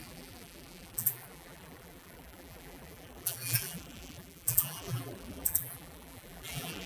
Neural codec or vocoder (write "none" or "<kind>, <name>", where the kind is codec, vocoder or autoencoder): vocoder, BigVGAN v2